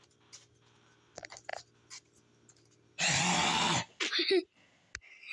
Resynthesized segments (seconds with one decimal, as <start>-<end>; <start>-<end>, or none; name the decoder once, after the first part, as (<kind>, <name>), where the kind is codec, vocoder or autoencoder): 1.5-3.9 (vocoder, BigVGAN v2)